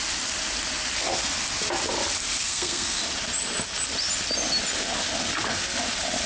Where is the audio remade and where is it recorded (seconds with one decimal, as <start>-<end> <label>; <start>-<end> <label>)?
0.0-2.4 recorded; 2.4-3.0 remade; 3.0-6.3 recorded